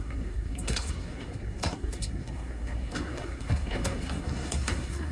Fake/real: fake